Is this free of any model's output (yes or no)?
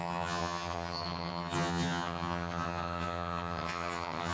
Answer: no